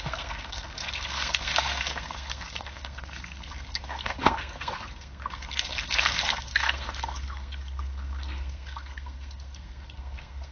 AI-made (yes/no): yes